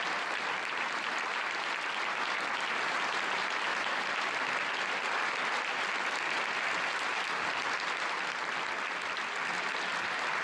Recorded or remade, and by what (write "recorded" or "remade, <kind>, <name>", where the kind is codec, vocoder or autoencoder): recorded